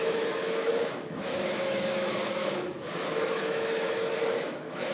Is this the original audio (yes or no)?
no